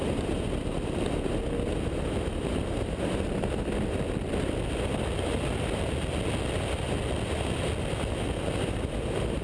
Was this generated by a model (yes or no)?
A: no